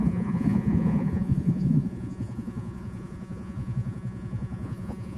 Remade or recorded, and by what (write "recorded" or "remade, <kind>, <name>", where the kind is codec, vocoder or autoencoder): remade, vocoder, Vocos